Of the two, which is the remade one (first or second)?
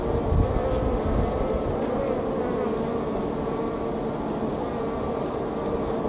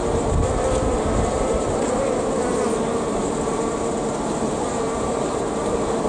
second